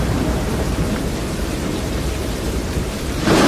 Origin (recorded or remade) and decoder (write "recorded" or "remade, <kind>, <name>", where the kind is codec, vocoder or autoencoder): remade, vocoder, BigVGAN v2